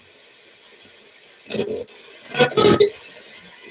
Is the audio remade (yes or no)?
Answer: no